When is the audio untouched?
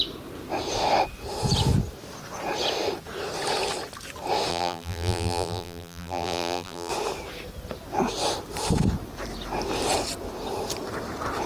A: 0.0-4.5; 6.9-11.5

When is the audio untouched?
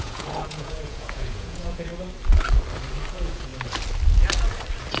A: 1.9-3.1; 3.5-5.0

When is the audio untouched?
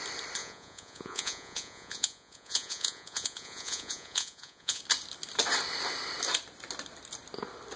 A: 0.0-0.4; 4.8-7.8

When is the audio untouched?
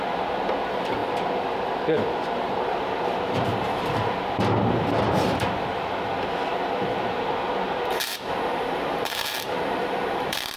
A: none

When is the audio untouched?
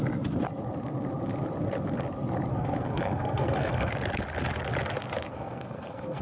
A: 0.0-2.5; 3.9-5.3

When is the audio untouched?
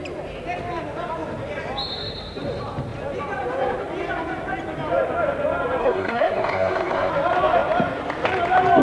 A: 0.0-5.8; 7.1-8.8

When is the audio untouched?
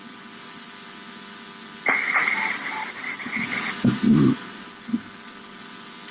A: 0.0-2.2; 4.7-6.1